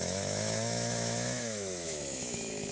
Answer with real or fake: fake